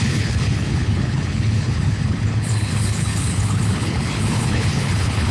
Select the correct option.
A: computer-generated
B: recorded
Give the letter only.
A